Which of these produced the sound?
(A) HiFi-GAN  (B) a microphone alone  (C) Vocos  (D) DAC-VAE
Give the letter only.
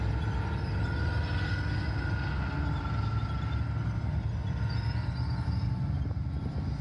B